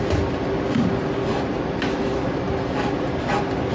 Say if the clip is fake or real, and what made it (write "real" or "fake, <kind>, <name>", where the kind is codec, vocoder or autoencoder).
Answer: real